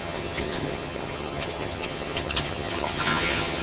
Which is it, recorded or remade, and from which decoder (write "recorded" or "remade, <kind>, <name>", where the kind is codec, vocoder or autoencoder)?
remade, vocoder, HiFi-GAN